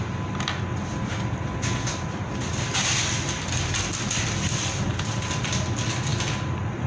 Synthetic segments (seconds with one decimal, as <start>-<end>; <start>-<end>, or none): none